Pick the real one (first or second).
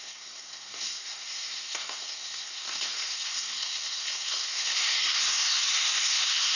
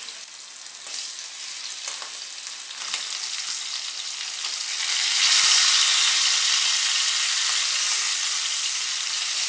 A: second